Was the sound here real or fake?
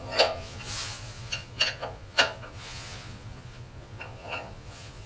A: fake